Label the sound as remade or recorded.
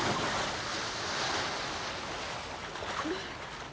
recorded